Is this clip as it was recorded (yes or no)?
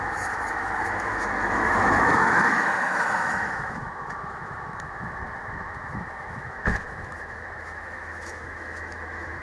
no